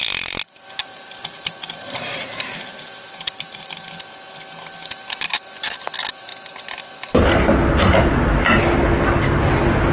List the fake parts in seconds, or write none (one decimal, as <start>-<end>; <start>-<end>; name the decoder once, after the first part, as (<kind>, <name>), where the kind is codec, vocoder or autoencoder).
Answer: 0.9-3.9 (vocoder, BigVGAN v2)